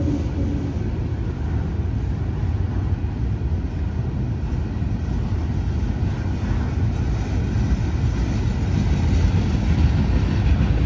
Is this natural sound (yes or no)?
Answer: yes